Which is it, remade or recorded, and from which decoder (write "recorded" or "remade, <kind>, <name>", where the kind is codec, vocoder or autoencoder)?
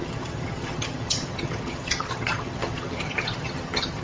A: remade, vocoder, HiFi-GAN